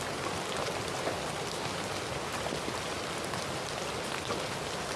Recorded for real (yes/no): yes